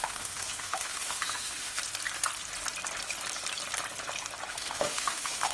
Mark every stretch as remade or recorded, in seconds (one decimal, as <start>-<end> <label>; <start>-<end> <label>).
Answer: 0.0-1.8 remade; 1.8-4.5 recorded; 4.5-5.5 remade